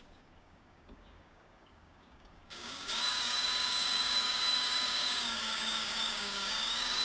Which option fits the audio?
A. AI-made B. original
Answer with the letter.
A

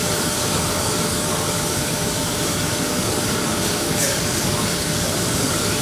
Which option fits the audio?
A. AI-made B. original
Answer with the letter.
A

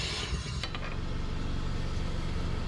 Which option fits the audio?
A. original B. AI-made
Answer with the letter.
A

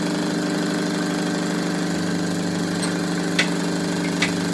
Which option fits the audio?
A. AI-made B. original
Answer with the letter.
B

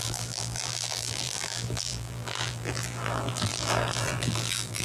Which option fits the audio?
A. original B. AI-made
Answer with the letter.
B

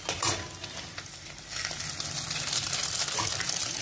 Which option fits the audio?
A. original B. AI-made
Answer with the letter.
A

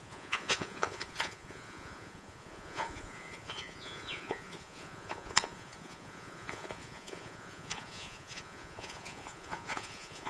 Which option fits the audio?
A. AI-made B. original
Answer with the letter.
A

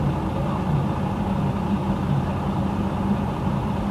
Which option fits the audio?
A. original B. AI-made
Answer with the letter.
A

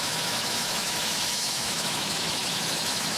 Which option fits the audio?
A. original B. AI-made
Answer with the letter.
B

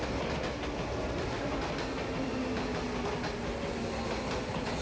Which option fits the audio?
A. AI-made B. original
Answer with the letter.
B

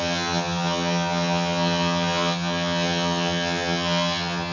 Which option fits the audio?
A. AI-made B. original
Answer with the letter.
A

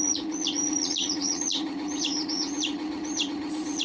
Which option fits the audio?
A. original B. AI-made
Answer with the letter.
B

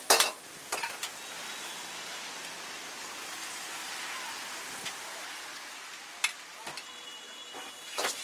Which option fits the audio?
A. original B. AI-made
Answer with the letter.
A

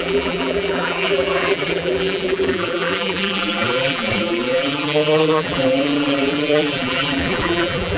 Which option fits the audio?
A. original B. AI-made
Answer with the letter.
B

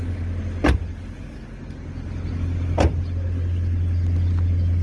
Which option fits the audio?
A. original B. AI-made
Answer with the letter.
A